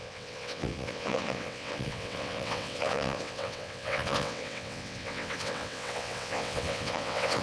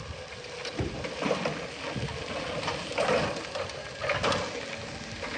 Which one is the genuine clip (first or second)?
second